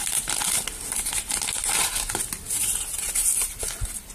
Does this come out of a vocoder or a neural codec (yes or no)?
no